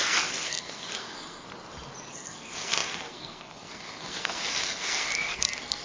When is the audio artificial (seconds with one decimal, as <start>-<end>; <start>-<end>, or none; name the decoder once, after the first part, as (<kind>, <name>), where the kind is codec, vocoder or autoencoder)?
0.0-1.5 (codec, SNAC); 2.1-5.8